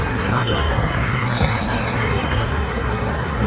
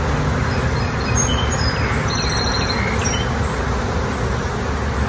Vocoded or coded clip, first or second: first